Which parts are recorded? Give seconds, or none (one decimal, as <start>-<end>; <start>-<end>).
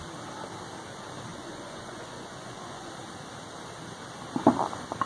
0.0-1.3; 2.9-5.1